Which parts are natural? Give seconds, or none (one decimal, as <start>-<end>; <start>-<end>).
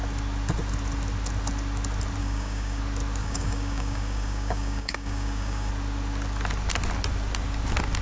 0.0-2.2; 2.8-3.2; 5.7-8.0